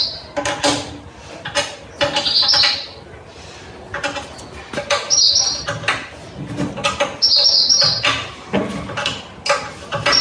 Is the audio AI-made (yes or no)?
no